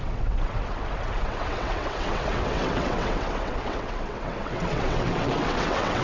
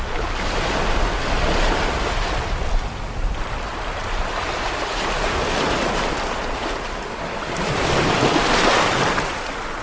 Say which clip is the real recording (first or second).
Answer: second